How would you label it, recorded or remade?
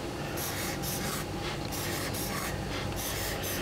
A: recorded